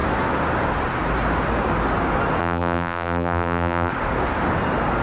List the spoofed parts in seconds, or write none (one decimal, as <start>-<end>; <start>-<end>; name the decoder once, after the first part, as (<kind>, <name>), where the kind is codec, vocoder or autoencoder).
2.4-3.9 (vocoder, BigVGAN v2)